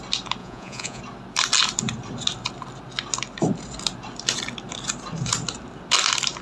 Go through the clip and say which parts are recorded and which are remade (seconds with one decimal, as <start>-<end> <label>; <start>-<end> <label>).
0.0-0.4 recorded; 0.4-1.0 remade; 1.0-6.4 recorded